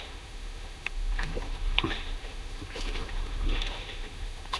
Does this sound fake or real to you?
fake